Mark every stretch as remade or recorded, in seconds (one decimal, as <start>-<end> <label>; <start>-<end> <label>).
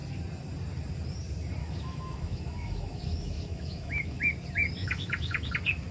0.0-1.6 recorded; 1.6-4.2 remade; 4.2-4.8 recorded; 4.8-5.5 remade; 5.5-5.9 recorded